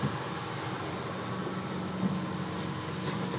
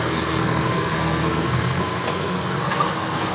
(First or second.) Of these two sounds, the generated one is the second